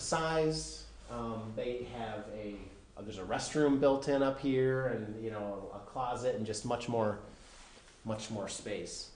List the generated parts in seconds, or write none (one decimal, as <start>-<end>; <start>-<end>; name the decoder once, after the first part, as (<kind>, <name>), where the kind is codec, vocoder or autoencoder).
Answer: 2.6-3.1 (autoencoder, DAC-VAE)